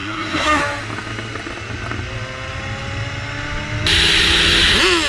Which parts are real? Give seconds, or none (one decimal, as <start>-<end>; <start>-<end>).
0.6-5.1